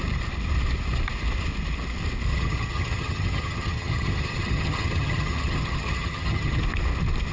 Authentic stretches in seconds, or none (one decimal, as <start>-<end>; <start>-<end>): 0.0-2.3; 6.6-7.3